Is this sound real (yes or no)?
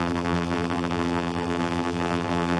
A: no